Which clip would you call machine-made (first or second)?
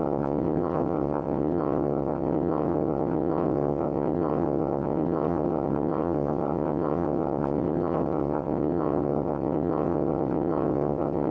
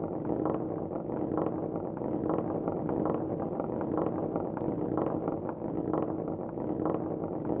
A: first